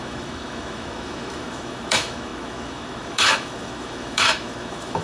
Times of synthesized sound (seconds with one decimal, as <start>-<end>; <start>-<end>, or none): 0.0-5.0